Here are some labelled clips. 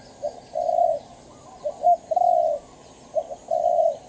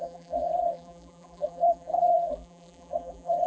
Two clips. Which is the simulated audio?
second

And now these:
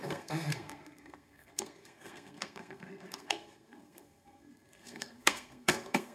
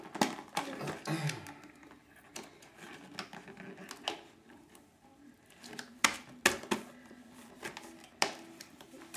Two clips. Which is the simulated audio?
first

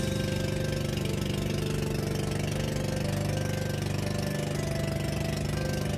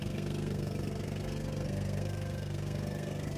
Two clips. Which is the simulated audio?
second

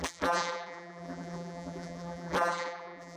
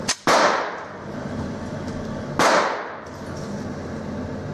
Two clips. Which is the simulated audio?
first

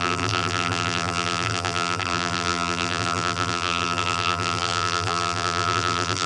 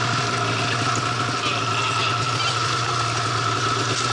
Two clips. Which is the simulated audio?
first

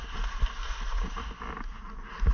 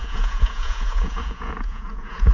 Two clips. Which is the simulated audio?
second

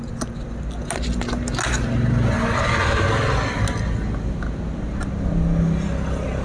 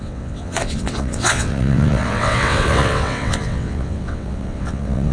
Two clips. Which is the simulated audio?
second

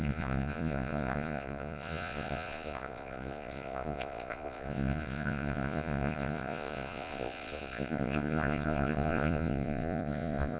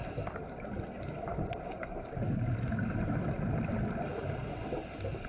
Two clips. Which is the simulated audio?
first